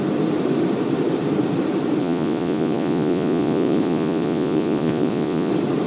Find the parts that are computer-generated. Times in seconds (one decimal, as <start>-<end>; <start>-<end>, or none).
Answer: 2.0-5.5